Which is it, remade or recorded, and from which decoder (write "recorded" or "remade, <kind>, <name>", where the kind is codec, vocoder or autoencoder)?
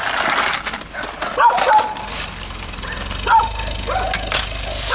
recorded